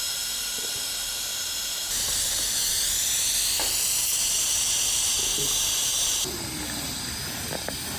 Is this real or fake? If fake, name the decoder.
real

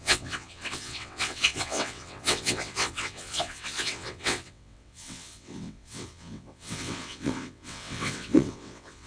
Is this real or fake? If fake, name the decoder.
fake, vocoder, WaveNeXt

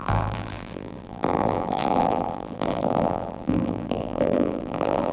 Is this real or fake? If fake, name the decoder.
fake, vocoder, BigVGAN v2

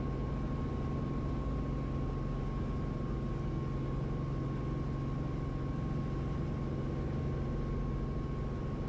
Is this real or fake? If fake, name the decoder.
real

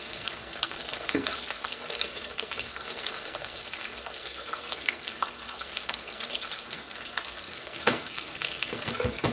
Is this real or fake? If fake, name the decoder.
fake, codec, SNAC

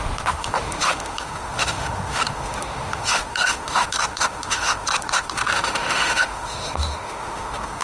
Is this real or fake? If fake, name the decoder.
fake, autoencoder, DAC-VAE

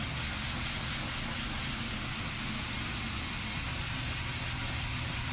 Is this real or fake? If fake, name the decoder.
real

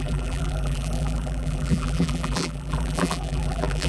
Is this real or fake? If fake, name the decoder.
fake, vocoder, BigVGAN v2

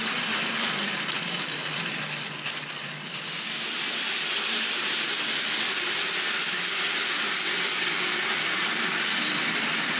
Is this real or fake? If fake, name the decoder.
real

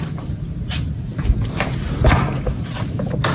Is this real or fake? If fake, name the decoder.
real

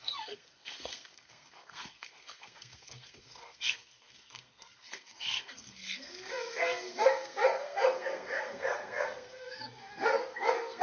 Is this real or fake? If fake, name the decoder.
fake, codec, SNAC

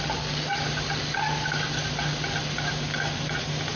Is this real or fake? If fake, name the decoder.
real